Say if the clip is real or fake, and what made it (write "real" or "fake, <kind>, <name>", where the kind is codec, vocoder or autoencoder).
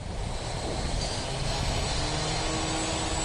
real